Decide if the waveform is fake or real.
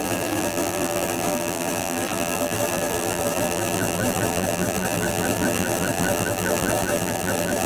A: fake